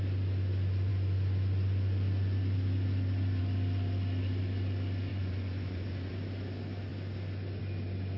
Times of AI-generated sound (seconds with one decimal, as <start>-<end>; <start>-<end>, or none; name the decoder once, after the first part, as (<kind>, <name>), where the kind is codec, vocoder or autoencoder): 5.1-6.1 (vocoder, Vocos)